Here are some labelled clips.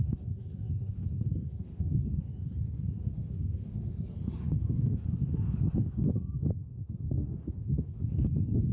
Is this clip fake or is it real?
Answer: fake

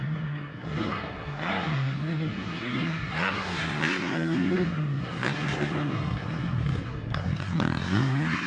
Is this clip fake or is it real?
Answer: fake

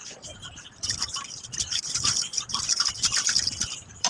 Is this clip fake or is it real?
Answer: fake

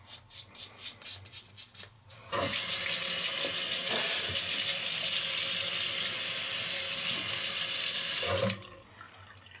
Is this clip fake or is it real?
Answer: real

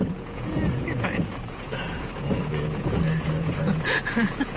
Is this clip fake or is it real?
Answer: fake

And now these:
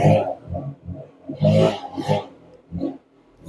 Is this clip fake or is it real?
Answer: real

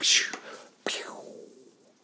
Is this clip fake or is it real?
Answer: real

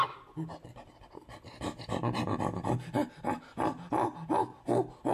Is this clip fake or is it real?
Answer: real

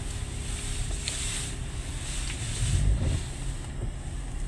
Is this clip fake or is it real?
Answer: real